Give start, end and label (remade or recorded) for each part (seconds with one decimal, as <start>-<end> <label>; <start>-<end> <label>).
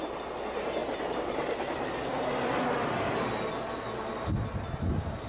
0.0-0.8 recorded; 0.8-3.0 remade; 3.0-5.3 recorded